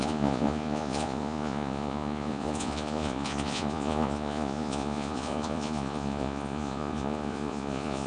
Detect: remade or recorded remade